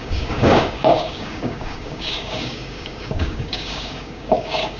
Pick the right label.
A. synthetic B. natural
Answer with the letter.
A